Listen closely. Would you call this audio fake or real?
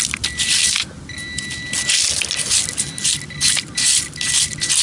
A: real